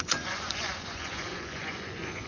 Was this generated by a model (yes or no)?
yes